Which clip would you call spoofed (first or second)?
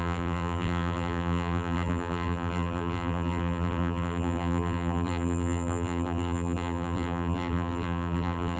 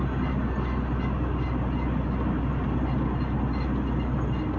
first